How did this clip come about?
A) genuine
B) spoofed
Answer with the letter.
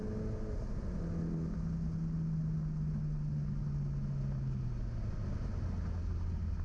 A